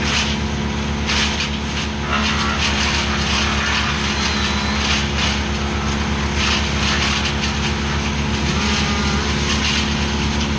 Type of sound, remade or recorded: recorded